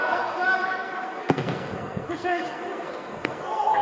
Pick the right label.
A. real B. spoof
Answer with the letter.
B